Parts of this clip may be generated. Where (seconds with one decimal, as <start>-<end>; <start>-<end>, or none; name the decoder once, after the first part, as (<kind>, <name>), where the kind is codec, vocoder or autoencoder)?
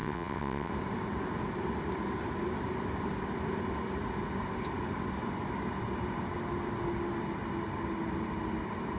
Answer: 0.0-0.7 (vocoder, WaveNeXt)